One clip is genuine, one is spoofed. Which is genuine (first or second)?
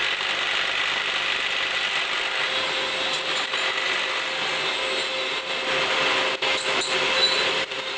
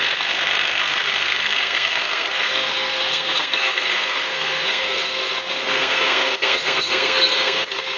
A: first